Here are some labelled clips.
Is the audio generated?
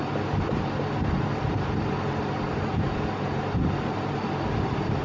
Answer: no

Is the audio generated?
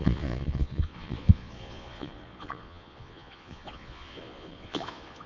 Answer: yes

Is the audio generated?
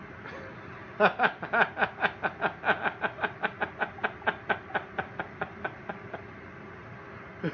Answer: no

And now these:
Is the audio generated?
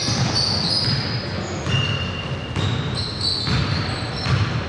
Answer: no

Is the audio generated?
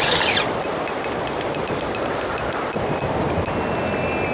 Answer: no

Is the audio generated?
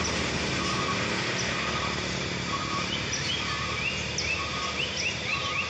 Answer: no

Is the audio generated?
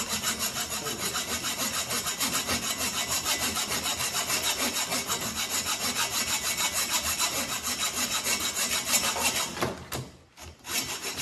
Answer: no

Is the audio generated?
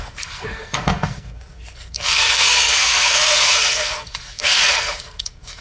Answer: yes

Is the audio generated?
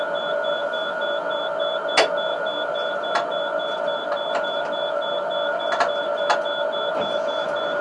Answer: no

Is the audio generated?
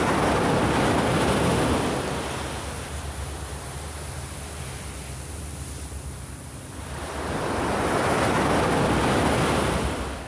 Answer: no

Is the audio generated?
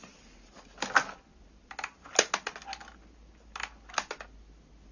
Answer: no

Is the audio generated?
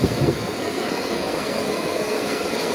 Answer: yes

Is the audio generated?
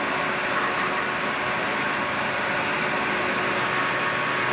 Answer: no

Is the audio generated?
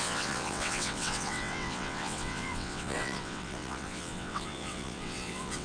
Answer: yes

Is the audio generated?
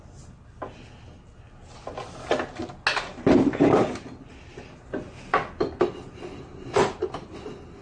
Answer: no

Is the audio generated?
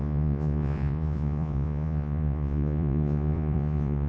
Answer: yes